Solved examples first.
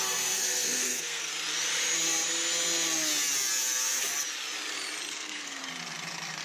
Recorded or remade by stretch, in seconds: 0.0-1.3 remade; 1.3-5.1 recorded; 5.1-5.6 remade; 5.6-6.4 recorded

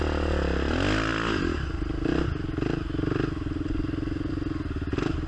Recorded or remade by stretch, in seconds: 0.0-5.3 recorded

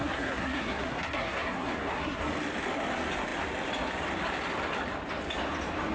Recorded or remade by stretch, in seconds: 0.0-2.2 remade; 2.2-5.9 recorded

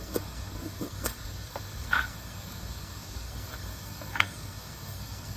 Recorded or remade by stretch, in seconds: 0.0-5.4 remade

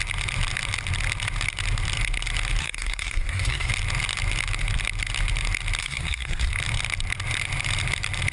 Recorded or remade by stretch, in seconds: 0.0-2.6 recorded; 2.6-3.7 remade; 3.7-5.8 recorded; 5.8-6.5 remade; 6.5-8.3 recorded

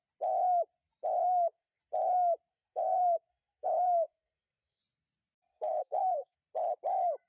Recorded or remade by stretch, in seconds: 0.0-1.2 recorded; 1.2-1.8 remade; 1.8-2.5 recorded; 2.5-4.8 remade; 4.8-5.5 recorded; 5.5-6.4 remade; 6.4-7.3 recorded

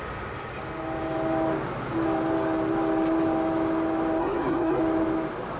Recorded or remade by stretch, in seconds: 0.0-4.2 recorded; 4.2-4.8 remade; 4.8-5.6 recorded

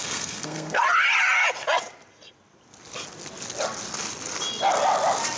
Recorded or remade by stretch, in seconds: 0.0-0.8 remade; 0.8-5.4 recorded